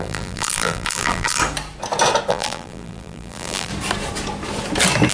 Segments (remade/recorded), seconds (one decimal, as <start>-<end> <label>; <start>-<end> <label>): 0.0-1.4 remade; 1.4-2.3 recorded; 2.3-3.7 remade; 3.7-5.1 recorded